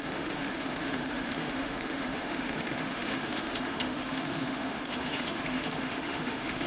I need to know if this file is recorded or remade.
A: remade